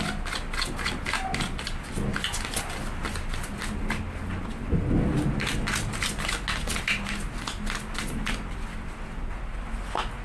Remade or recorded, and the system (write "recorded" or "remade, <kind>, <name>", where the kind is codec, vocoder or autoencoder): recorded